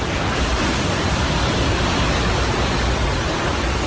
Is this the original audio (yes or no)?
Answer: yes